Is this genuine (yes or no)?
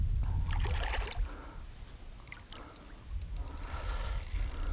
yes